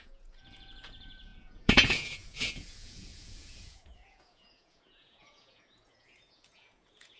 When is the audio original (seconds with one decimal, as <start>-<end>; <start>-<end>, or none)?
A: none